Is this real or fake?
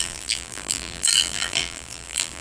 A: fake